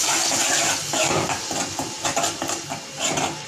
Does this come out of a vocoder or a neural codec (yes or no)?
no